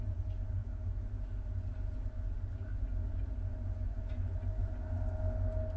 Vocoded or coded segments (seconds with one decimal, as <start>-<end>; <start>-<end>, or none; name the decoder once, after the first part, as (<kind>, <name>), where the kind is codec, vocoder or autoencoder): 0.6-1.3 (autoencoder, DAC-VAE)